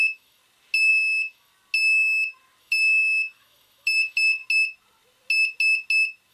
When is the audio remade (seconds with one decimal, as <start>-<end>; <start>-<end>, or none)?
0.0-0.4; 0.9-1.5; 2.6-4.4